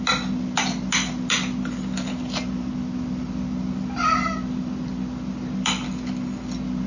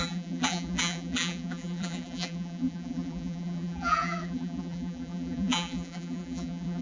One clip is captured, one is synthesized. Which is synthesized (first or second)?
second